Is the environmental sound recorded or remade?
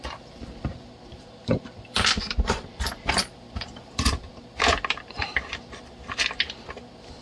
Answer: remade